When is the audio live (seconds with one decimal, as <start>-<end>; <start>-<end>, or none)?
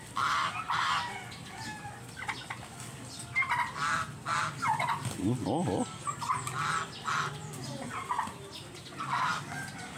0.0-10.0